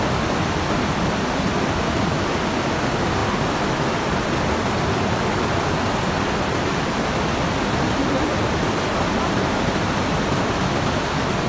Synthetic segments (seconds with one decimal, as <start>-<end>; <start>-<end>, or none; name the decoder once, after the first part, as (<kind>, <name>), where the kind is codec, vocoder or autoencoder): none